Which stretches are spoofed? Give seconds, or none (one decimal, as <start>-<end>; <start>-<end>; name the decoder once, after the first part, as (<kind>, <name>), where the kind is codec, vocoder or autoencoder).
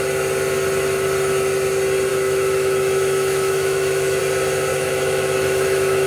2.1-4.2 (autoencoder, DAC-VAE); 4.7-6.1